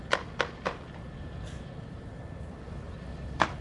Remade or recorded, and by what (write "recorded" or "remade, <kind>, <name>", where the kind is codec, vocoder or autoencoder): recorded